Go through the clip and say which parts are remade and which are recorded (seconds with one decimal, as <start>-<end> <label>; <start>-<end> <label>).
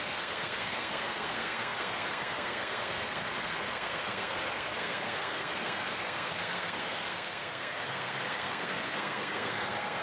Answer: 0.0-10.0 remade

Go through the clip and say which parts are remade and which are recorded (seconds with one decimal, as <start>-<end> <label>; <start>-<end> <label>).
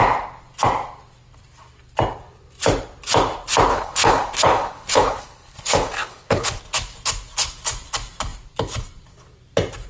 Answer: 0.0-3.7 recorded; 3.7-6.6 remade; 6.6-9.9 recorded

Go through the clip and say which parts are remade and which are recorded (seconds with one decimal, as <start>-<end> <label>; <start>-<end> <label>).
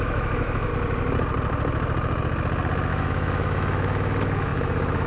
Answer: 0.0-0.7 remade; 0.7-2.9 recorded; 2.9-5.1 remade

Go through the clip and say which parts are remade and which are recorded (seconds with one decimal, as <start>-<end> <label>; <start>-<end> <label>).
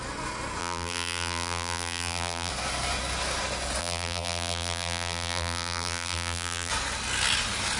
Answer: 0.0-0.6 recorded; 0.6-2.5 remade; 2.5-3.8 recorded; 3.8-6.7 remade; 6.7-7.8 recorded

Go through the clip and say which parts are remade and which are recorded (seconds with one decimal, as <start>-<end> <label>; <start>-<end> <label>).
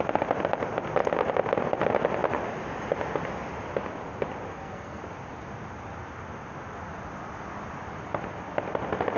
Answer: 0.0-4.5 recorded; 4.5-5.0 remade; 5.0-9.2 recorded